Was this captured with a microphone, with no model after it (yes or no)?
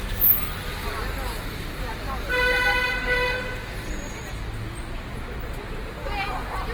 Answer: yes